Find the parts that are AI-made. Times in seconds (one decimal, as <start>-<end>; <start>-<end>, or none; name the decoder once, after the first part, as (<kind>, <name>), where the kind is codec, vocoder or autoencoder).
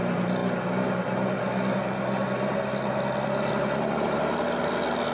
none